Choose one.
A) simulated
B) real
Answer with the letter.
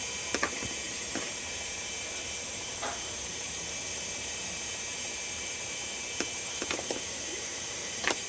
A